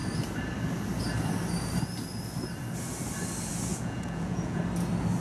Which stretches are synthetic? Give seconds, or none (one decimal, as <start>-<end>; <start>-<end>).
3.7-4.6